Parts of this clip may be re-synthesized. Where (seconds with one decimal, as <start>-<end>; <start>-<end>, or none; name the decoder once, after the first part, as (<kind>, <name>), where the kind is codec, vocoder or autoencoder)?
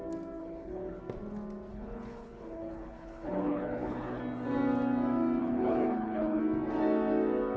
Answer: 0.4-1.0 (codec, HILCodec); 1.7-4.2; 5.4-6.4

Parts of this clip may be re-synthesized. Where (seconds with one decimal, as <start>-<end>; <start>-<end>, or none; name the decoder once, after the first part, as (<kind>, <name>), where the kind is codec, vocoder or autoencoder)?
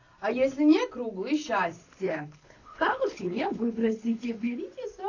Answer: 2.0-4.6 (codec, HILCodec)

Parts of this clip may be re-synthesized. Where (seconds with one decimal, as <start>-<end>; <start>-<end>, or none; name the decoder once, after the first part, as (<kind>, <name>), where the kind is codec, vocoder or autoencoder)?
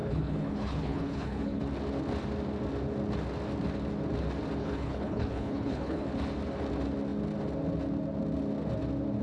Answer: 0.0-1.6 (codec, HILCodec); 4.6-6.1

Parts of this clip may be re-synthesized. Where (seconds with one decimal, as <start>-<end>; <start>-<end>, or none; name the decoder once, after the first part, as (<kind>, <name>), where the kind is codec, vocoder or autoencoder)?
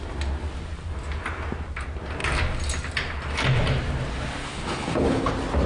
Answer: 4.4-5.3 (codec, HILCodec)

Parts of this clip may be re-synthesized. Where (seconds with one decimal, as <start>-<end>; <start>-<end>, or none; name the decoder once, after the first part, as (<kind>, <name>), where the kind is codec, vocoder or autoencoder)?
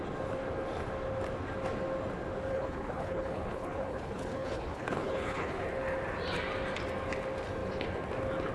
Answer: 2.5-5.6 (codec, HILCodec)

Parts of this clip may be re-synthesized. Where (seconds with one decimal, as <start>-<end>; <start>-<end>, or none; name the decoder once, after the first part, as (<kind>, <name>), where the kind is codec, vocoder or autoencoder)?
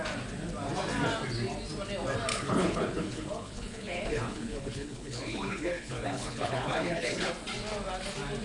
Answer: 2.3-7.3 (codec, HILCodec)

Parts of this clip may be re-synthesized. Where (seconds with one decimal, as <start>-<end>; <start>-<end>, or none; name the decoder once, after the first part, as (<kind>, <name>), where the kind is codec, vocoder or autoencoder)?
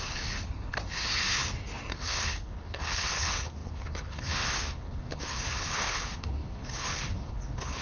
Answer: 0.0-7.8 (codec, HILCodec)